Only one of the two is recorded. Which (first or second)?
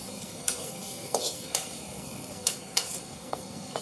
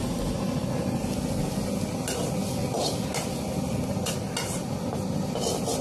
second